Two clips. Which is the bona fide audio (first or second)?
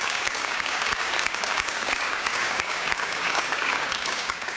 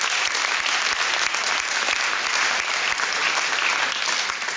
second